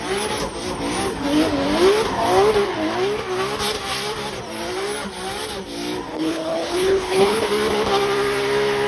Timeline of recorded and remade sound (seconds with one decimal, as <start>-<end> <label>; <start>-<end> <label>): 0.0-6.1 recorded; 6.1-7.5 remade; 7.5-8.9 recorded